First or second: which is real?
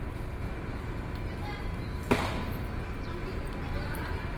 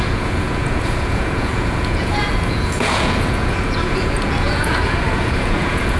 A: first